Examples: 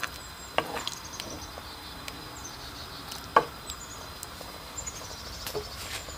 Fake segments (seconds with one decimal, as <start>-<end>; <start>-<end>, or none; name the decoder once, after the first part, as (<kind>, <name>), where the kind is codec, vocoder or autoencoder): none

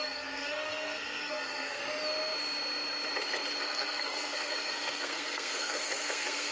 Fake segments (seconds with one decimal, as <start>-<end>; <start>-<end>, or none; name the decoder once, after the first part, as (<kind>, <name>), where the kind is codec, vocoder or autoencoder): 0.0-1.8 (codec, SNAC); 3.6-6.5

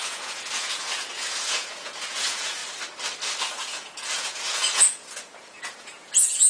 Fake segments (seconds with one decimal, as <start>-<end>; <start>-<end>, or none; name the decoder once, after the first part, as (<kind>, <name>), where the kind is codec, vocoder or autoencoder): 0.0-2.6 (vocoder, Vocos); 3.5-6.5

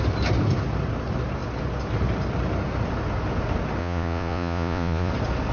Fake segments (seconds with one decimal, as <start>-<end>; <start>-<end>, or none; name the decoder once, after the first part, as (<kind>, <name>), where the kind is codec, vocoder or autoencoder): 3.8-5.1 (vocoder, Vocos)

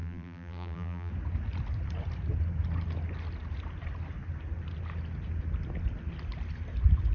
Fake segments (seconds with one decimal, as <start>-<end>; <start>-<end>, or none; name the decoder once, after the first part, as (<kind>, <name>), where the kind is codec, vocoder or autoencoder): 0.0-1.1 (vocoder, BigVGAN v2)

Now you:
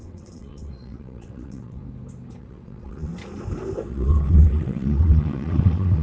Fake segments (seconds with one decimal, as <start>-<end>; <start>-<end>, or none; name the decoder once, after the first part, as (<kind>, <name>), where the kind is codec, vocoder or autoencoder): 0.0-1.8 (vocoder, WaveNeXt); 2.4-3.1; 3.9-6.0